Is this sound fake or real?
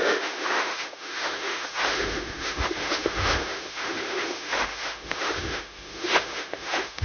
fake